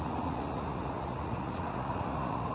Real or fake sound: fake